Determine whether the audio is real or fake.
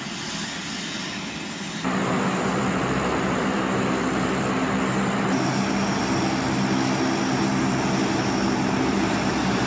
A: real